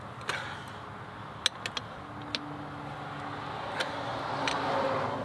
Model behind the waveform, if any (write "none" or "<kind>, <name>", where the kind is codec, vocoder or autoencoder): none